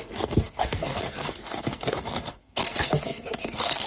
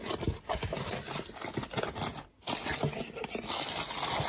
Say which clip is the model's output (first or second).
first